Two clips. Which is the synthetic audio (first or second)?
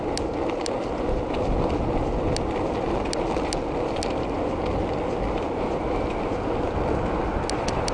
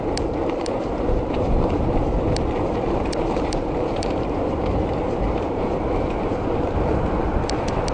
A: second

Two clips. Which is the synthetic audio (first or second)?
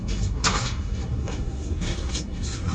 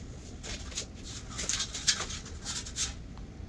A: first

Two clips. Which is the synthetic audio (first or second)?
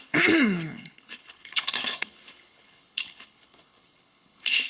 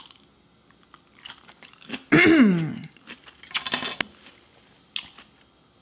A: first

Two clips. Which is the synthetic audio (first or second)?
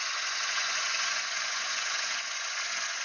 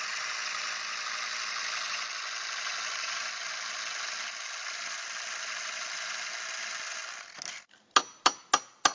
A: first